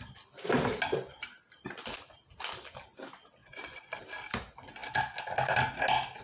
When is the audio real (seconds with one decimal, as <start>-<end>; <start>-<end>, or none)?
0.0-3.4; 4.0-6.2